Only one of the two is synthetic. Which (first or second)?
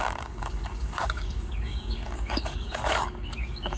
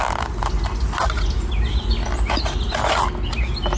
first